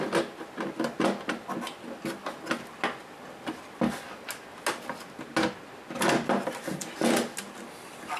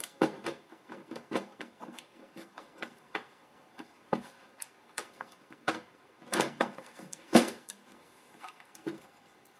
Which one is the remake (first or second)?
second